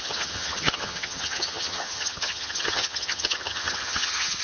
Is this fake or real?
fake